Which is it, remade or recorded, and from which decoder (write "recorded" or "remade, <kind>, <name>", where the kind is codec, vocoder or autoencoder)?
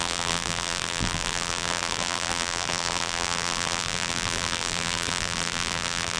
remade, vocoder, BigVGAN v2